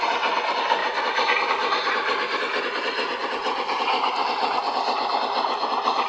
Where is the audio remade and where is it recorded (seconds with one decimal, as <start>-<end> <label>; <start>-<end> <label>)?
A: 0.0-4.2 recorded; 4.2-4.8 remade; 4.8-6.1 recorded